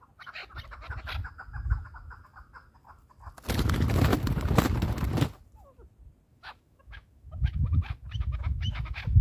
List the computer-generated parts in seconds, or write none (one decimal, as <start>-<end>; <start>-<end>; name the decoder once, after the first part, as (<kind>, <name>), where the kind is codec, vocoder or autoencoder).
6.3-9.2 (autoencoder, DAC-VAE)